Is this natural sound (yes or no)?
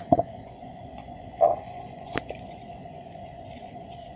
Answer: no